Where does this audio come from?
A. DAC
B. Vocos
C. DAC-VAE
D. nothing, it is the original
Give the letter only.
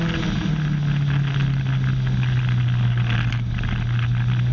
D